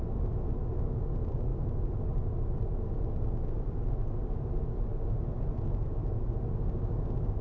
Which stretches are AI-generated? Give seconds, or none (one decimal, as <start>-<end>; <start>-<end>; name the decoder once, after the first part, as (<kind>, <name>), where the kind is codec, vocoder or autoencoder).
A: 1.5-2.8 (vocoder, BigVGAN v2); 4.9-5.4